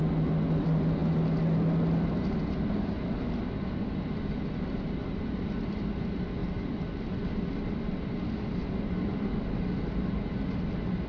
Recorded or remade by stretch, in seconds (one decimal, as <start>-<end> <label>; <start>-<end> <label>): 0.0-5.0 recorded; 5.0-5.6 remade; 5.6-6.4 recorded; 6.4-8.6 remade; 8.6-11.1 recorded